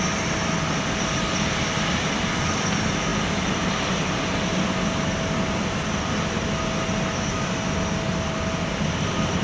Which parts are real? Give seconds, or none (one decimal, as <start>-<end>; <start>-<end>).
0.0-9.4

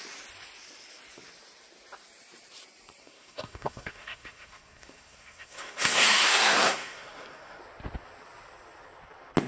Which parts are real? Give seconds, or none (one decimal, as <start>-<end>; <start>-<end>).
0.0-3.0; 7.6-9.5